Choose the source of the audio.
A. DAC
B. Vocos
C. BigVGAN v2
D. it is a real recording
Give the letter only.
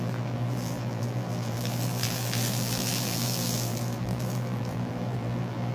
C